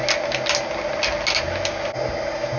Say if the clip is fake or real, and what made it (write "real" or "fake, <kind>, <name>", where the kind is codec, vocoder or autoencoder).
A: real